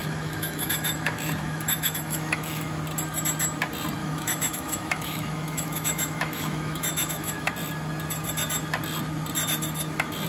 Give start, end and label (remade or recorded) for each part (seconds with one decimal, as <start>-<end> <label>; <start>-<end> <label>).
0.0-2.8 remade; 2.8-4.0 recorded; 4.0-7.5 remade; 7.5-10.3 recorded